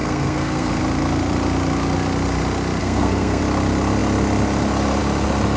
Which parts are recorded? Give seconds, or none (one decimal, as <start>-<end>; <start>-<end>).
0.8-2.8; 3.4-5.6